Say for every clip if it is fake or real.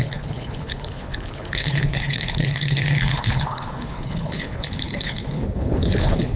fake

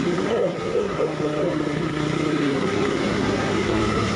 fake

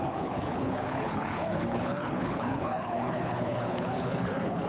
fake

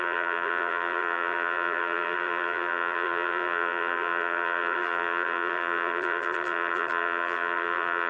fake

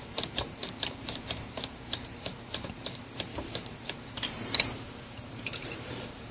fake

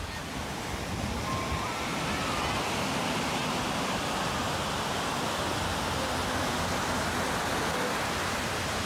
real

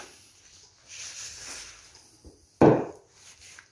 real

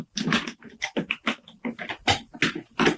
real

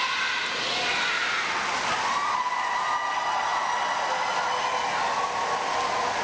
real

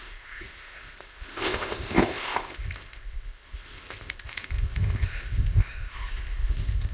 fake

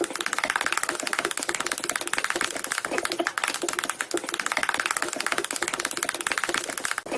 real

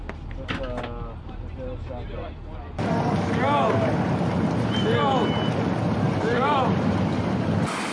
real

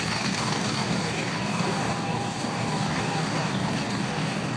fake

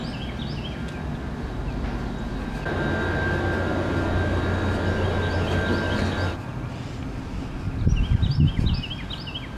real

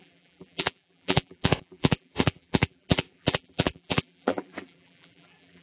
fake